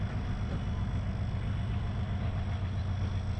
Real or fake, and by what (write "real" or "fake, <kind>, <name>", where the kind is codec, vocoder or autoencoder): real